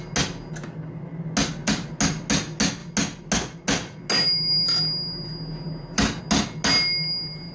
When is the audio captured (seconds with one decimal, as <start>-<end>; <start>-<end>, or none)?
0.0-7.5